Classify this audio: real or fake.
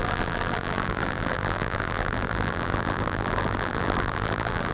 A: fake